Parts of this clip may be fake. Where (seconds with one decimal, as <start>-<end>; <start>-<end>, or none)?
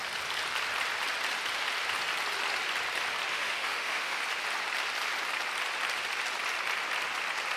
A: 3.3-4.2